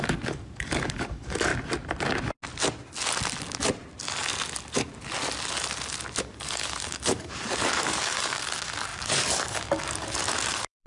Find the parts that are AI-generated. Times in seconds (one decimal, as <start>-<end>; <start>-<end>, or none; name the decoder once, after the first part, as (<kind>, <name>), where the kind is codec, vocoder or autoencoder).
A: 0.0-1.5 (codec, DAC); 6.2-10.9